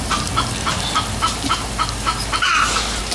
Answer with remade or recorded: recorded